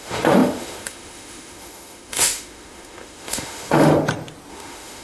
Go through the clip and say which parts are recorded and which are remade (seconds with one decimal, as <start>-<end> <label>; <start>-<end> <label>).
0.0-3.9 remade; 3.9-4.5 recorded; 4.5-5.0 remade